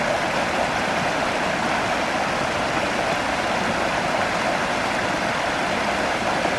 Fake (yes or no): no